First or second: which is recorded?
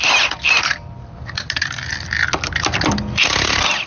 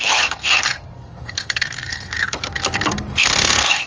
first